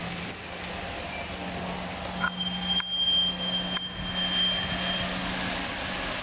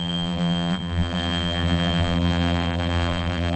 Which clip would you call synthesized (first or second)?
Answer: second